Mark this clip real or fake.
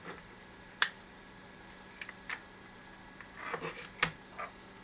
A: real